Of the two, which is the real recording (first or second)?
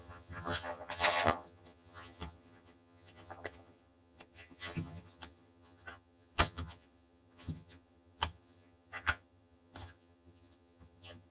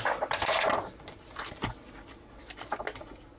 second